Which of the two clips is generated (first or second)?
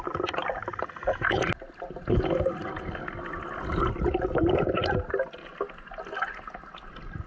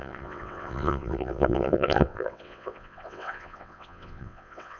second